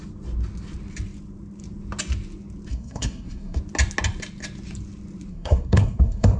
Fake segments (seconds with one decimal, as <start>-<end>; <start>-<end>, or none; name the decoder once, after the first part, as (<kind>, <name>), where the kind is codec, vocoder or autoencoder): 2.7-3.6 (codec, SNAC); 5.3-6.4